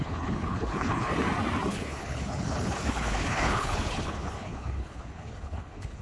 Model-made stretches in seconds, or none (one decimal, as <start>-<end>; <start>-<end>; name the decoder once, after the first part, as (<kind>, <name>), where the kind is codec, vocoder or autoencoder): 0.0-1.1 (codec, HILCodec); 1.7-6.0